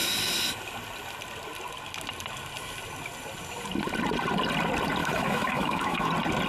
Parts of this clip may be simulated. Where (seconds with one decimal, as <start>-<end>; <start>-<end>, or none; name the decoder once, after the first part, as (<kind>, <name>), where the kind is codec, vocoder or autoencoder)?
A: 5.0-6.1 (autoencoder, DAC-VAE)